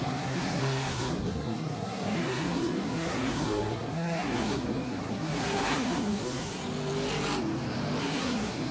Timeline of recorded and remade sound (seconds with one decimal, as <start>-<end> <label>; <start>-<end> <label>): 0.0-6.6 remade; 6.6-8.0 recorded; 8.0-8.7 remade